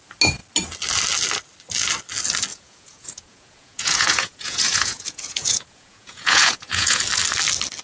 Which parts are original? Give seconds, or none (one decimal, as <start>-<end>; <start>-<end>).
0.0-2.5; 7.0-7.8